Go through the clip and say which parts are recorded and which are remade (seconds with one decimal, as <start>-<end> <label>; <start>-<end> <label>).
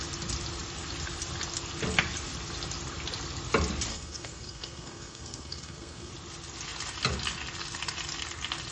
0.0-3.9 recorded; 3.9-6.1 remade; 6.1-8.7 recorded